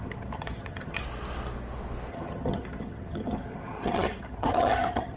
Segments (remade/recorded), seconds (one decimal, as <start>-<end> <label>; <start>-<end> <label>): 0.0-1.0 remade; 1.0-2.1 recorded; 2.1-5.2 remade